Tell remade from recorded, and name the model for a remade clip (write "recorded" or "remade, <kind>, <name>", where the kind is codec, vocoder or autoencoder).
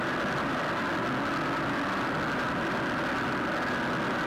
recorded